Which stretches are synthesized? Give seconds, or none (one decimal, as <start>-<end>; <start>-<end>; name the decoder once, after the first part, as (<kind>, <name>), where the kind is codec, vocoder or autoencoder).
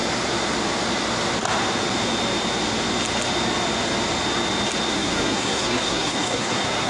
4.9-6.9 (codec, SNAC)